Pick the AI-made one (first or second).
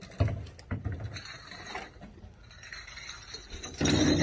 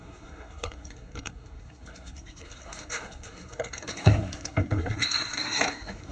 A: second